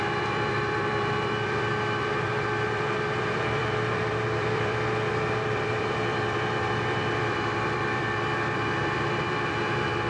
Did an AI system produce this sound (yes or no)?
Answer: yes